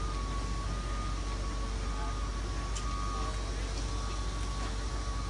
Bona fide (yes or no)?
yes